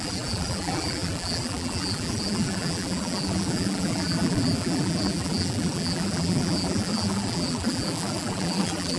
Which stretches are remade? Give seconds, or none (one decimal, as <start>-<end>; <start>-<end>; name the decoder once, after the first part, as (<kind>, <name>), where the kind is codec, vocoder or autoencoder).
0.0-9.0 (vocoder, BigVGAN v2)